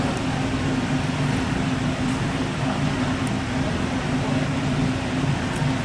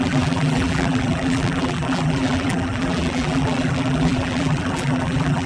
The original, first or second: first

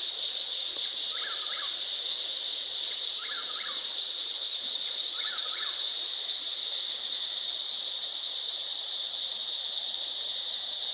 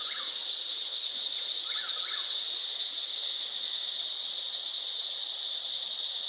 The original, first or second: second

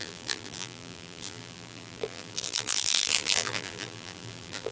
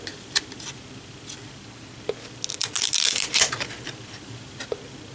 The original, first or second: second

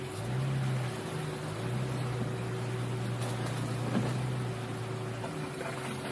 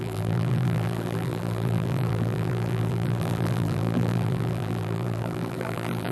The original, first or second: first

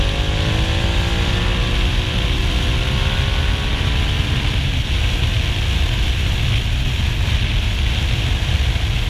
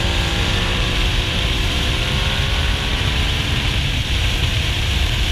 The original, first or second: first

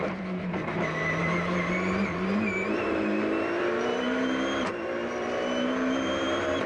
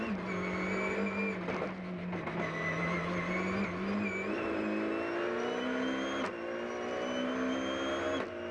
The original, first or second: second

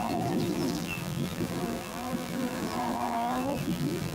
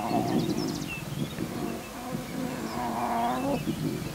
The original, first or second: second